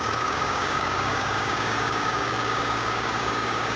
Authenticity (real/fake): fake